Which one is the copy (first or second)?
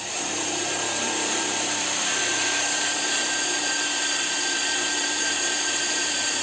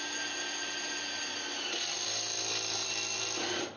first